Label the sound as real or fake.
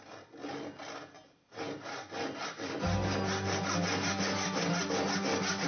real